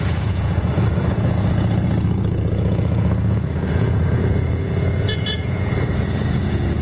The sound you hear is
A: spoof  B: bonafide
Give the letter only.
A